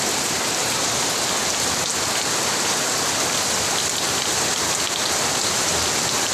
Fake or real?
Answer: real